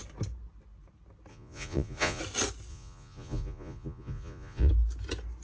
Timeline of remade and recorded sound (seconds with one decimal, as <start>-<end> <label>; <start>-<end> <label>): 0.0-1.3 recorded; 1.3-2.2 remade; 2.2-2.7 recorded; 2.7-4.7 remade; 4.7-5.4 recorded